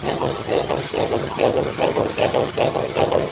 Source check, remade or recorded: remade